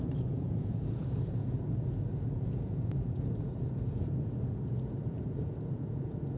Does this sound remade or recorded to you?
remade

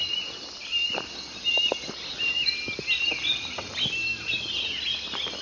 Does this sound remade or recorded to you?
recorded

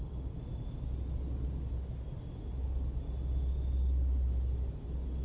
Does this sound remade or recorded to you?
recorded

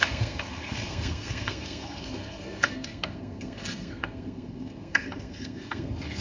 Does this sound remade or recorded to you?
remade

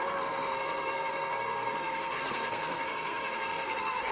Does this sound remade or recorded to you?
remade